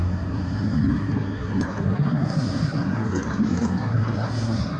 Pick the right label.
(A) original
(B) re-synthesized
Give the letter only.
B